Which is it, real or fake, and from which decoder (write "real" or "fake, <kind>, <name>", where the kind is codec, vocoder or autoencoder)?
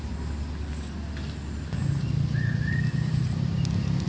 real